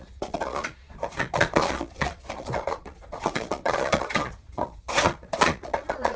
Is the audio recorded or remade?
remade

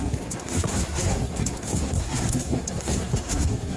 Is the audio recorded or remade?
remade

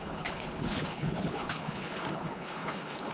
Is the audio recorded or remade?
remade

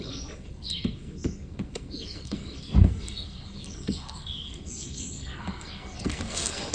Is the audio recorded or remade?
remade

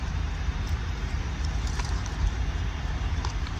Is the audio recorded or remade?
remade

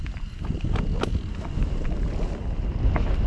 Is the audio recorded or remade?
recorded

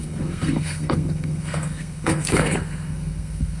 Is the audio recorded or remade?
remade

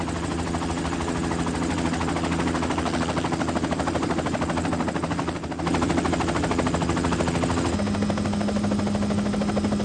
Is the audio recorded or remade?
recorded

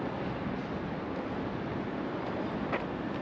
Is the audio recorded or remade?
recorded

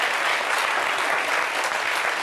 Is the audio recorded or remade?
recorded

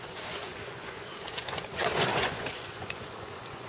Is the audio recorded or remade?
remade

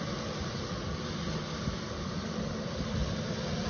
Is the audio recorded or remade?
recorded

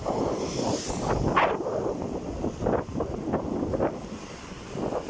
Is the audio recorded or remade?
recorded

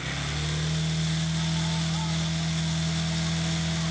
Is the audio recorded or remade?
recorded